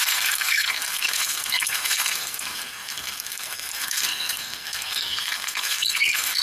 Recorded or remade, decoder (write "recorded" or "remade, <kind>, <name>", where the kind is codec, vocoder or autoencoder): remade, codec, SNAC